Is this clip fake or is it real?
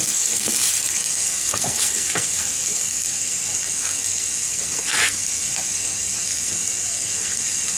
fake